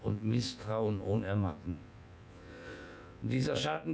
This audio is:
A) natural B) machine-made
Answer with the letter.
B